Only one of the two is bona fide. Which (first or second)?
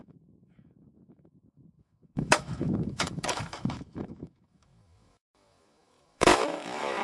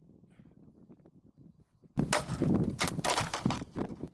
second